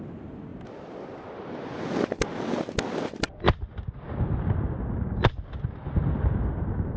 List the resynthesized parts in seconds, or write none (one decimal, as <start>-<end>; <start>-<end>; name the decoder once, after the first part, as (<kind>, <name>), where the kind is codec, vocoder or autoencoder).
none